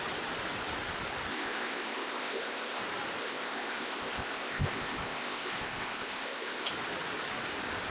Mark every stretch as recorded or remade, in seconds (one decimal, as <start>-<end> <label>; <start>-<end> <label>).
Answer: 0.0-1.3 recorded; 1.3-2.8 remade; 2.8-3.2 recorded; 3.2-6.7 remade; 6.7-7.9 recorded